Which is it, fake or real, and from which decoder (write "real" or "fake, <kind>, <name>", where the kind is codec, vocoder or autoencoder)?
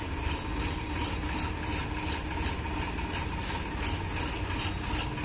real